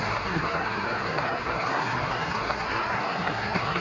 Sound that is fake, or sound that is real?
fake